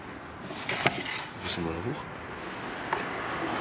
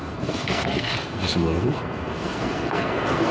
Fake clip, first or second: second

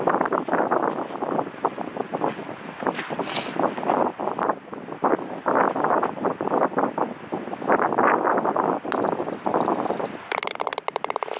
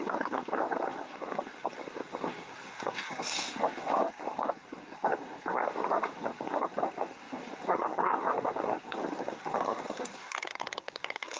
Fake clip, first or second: second